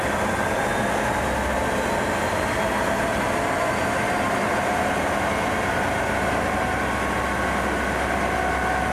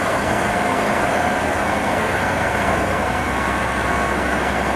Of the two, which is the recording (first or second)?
first